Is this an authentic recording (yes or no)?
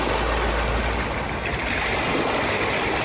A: yes